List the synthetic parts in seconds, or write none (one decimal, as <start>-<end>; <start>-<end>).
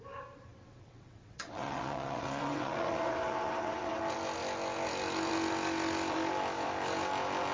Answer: 0.5-4.0